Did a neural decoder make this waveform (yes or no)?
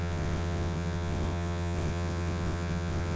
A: yes